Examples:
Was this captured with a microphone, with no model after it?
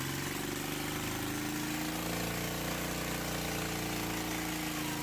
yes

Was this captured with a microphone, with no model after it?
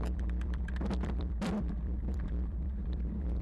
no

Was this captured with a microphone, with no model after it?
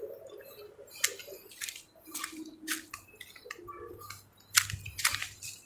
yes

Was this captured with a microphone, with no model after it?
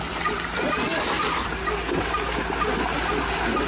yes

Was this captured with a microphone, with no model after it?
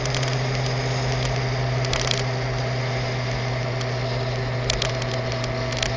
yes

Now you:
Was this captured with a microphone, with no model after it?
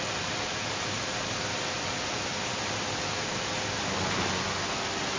yes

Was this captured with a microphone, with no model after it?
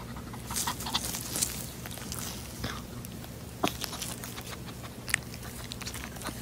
yes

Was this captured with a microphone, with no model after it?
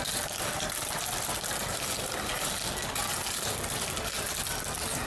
no